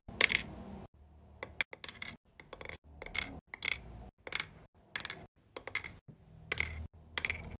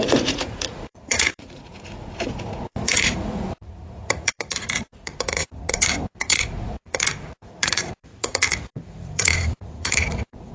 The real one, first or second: first